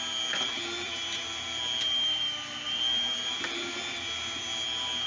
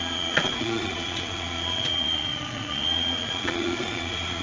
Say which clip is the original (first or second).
first